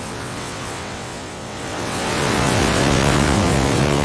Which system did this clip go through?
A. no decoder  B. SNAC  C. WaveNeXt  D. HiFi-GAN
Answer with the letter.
C